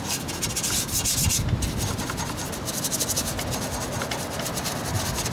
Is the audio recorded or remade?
recorded